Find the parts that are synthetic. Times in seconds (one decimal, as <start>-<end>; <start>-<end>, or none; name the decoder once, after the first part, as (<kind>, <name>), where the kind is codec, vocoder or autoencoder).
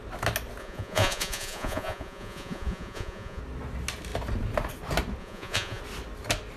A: 0.6-3.4 (vocoder, Vocos); 5.2-5.8